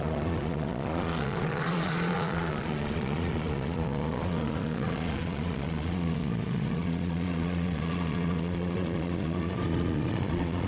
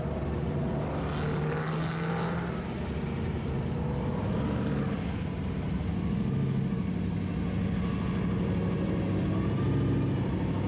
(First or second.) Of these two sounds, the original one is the second